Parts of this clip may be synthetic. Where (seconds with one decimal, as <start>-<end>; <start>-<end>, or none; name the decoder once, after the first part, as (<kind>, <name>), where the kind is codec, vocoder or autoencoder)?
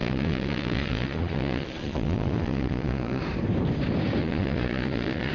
0.0-3.2 (vocoder, Vocos); 4.2-5.3